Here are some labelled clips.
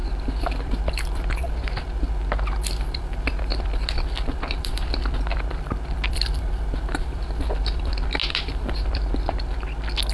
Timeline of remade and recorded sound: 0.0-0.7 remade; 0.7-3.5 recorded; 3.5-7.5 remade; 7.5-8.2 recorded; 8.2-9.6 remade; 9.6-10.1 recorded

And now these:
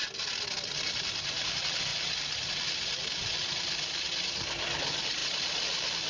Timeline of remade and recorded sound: 0.0-6.1 recorded

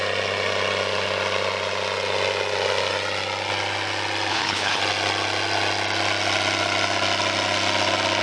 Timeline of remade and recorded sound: 0.0-4.3 recorded; 4.3-4.8 remade; 4.8-8.2 recorded

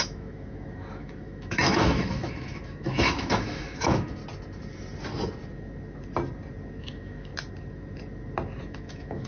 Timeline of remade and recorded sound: 0.0-4.2 remade; 4.2-6.8 recorded; 6.8-7.3 remade; 7.3-8.6 recorded; 8.6-9.3 remade